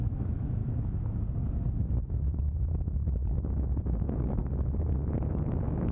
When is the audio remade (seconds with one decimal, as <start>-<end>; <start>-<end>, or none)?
0.0-0.6; 2.1-4.4; 5.3-5.9

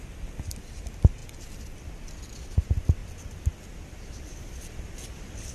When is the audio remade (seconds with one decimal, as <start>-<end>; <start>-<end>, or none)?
none

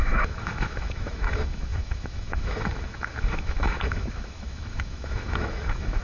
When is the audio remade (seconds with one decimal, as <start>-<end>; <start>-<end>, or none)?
0.0-6.0

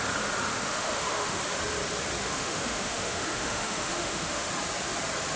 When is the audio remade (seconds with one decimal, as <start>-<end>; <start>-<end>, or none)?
0.5-1.4; 2.2-4.5

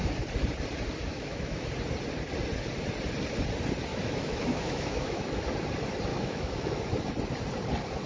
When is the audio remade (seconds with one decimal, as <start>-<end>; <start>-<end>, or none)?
1.1-1.7; 3.9-5.4; 6.1-6.8

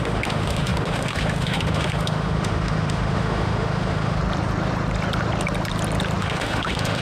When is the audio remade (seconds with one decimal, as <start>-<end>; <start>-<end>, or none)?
0.0-4.2; 6.2-7.0

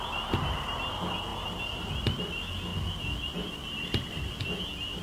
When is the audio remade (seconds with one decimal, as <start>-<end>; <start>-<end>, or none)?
none

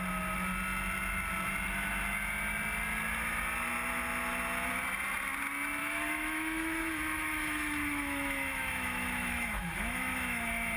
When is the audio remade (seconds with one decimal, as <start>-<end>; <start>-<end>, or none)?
5.8-10.8